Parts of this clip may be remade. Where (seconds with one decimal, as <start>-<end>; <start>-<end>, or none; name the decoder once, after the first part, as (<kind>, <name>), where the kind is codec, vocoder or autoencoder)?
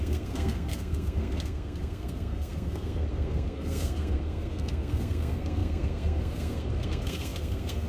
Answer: 0.0-7.9 (codec, SNAC)